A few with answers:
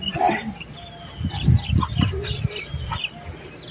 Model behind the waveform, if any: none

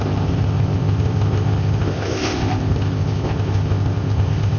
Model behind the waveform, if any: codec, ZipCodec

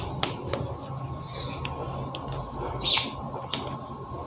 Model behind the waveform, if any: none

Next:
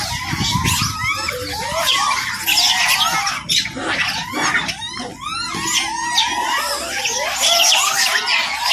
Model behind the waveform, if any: none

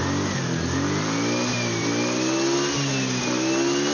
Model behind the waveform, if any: none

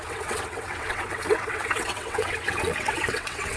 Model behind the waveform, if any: vocoder, WaveNeXt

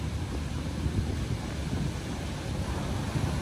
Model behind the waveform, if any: none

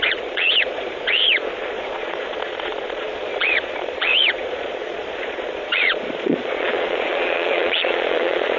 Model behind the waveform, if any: vocoder, Vocos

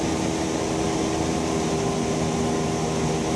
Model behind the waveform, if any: none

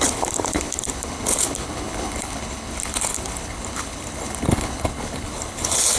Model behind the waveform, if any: codec, HILCodec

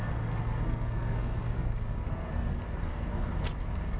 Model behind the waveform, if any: codec, SNAC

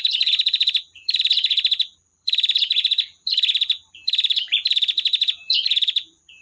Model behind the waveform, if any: vocoder, BigVGAN v2